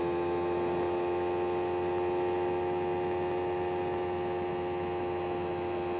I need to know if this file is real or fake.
real